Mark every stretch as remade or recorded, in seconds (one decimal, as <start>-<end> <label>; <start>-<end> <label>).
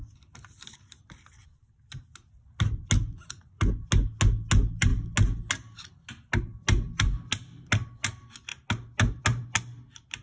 0.0-10.2 recorded